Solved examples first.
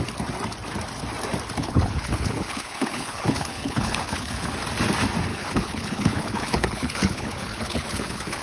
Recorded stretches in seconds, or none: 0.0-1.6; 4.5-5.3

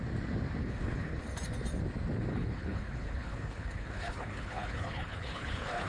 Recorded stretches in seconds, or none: 0.0-0.6; 1.2-2.3

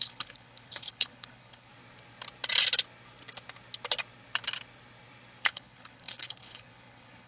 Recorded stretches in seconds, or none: 1.7-5.4

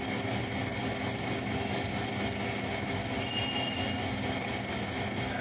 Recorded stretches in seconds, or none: 0.0-5.4

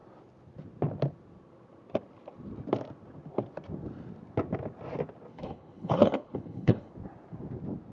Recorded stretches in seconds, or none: 0.0-5.3; 6.9-7.9

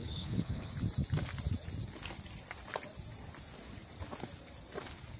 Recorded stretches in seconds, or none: 0.7-5.2